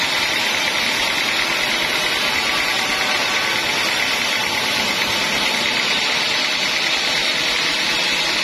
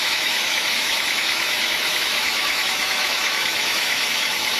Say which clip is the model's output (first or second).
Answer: second